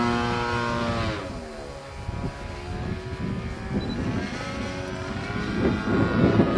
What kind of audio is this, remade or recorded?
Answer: recorded